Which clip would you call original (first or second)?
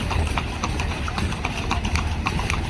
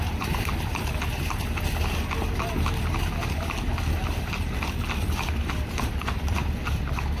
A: second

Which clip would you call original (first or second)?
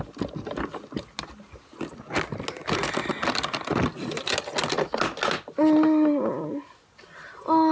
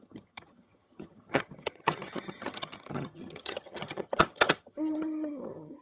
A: first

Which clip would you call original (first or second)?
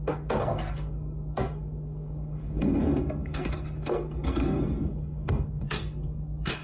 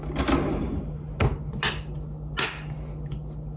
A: second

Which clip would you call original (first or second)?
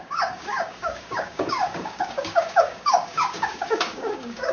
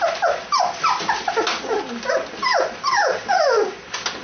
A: second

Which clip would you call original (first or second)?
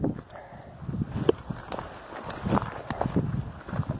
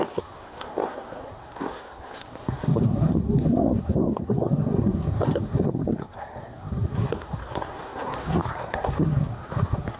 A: first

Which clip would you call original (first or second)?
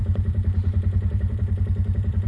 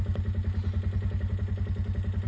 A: second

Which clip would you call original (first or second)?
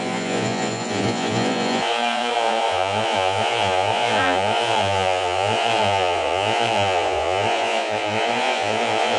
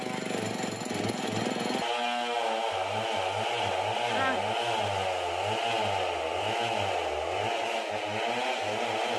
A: second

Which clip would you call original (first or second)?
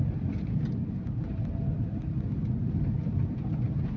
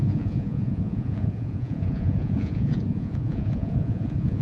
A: first